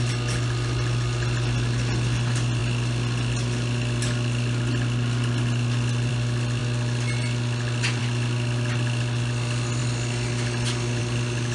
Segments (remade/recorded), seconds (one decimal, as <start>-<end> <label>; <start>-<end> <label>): 0.0-11.5 recorded